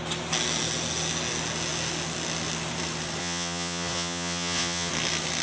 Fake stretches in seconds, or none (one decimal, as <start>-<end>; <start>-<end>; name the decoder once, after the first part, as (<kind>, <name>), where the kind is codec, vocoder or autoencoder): 3.2-4.9 (vocoder, Vocos)